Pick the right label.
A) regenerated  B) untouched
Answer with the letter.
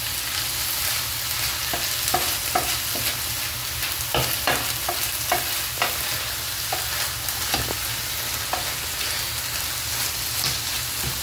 B